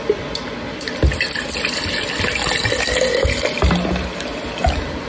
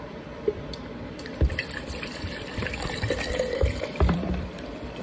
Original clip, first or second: first